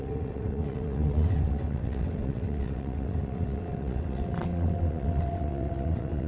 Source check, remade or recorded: remade